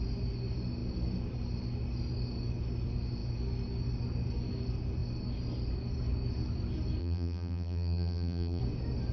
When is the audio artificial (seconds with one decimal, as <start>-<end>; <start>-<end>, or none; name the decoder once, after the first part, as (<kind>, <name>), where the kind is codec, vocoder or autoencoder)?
7.0-8.6 (vocoder, BigVGAN v2)

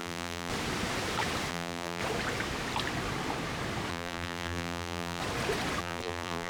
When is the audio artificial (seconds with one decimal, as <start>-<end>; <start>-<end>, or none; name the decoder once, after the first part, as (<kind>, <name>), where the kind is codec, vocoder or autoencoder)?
0.0-0.5 (vocoder, BigVGAN v2); 1.5-2.0; 3.9-5.2; 5.8-6.5

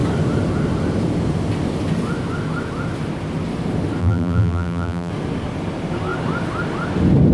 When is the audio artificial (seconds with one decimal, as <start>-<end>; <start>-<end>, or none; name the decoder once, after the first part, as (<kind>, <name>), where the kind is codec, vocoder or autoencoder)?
4.0-5.1 (vocoder, BigVGAN v2)

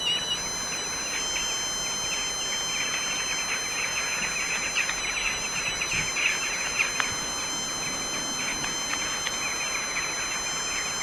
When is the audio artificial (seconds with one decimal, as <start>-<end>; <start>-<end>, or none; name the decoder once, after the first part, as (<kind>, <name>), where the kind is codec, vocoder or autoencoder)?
none